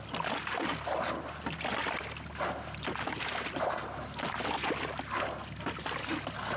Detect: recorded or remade recorded